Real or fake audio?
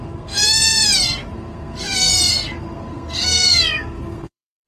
fake